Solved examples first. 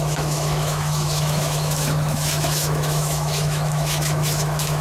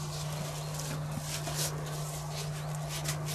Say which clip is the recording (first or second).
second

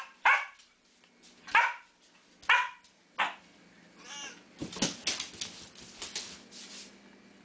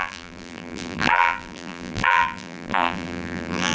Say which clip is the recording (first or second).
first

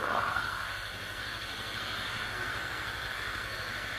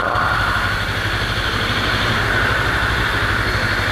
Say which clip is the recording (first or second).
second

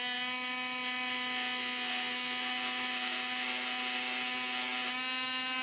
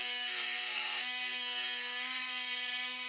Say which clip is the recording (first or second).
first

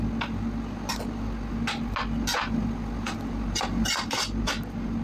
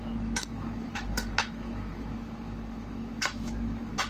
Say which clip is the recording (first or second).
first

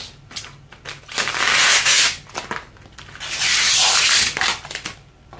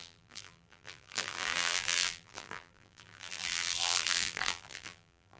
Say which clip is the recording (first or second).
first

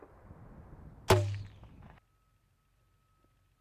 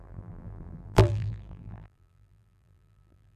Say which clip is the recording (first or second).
first